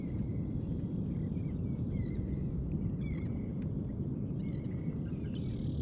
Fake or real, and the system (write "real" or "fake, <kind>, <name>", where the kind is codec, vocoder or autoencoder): real